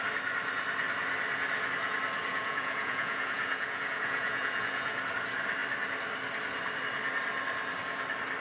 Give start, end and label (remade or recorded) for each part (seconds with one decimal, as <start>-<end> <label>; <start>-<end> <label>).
0.0-2.3 recorded; 2.3-5.0 remade; 5.0-8.4 recorded